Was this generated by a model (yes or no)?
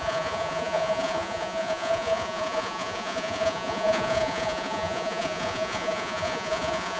yes